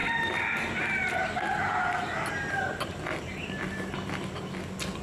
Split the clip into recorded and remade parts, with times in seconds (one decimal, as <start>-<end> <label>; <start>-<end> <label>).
0.0-5.0 recorded